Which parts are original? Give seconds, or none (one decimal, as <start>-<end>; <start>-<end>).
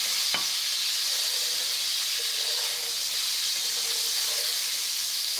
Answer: 0.0-4.5